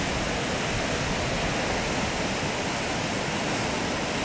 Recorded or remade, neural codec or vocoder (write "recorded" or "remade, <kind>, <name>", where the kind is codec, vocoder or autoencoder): recorded